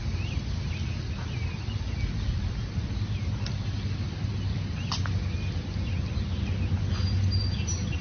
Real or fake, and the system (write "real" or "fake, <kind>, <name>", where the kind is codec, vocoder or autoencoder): real